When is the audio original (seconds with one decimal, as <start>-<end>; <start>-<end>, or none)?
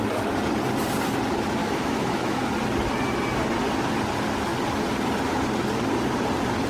0.0-1.6; 2.5-6.7